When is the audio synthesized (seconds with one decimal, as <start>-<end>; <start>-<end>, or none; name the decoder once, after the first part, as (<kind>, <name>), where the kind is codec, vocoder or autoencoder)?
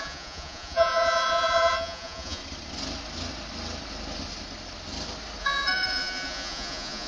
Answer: 0.0-2.4 (vocoder, Vocos); 5.4-7.1